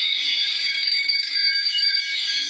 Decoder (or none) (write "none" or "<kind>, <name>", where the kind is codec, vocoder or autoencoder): codec, DAC